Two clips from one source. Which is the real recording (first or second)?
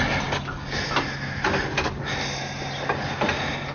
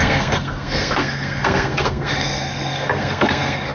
first